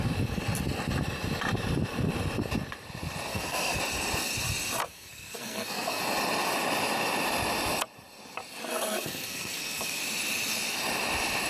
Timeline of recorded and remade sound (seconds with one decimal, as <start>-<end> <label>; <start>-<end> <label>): 0.0-3.3 recorded; 3.3-3.8 remade; 3.8-4.8 recorded; 4.8-6.0 remade; 6.0-8.7 recorded; 8.7-10.0 remade; 10.0-11.5 recorded